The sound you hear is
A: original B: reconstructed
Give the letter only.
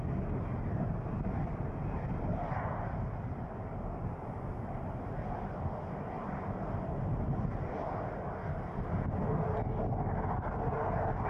A